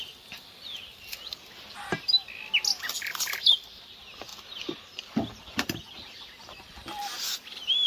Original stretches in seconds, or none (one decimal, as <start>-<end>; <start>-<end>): 0.0-7.9